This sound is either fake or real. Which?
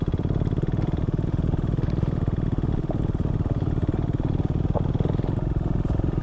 fake